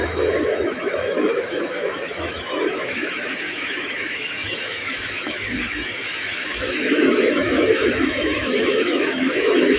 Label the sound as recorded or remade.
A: remade